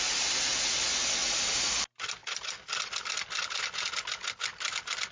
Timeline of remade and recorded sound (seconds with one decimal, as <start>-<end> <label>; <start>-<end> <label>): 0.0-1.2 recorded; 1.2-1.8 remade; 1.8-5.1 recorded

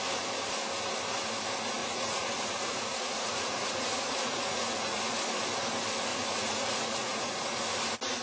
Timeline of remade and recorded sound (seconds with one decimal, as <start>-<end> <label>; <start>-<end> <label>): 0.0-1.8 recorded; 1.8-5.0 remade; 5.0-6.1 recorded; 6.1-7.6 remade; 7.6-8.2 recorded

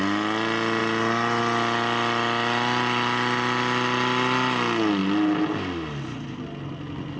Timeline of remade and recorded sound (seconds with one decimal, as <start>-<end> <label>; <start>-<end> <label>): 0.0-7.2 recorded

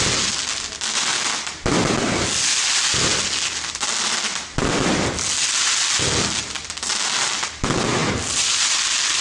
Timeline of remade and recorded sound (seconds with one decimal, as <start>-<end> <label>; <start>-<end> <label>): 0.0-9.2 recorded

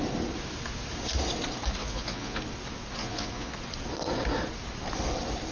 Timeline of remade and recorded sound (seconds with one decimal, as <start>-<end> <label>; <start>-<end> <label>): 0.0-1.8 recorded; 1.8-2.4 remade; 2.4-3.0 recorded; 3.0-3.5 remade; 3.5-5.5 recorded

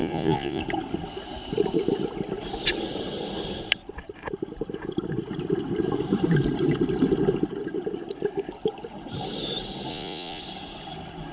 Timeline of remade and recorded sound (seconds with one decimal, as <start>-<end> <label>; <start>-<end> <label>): 0.0-0.6 remade; 0.6-9.9 recorded; 9.9-10.4 remade; 10.4-11.3 recorded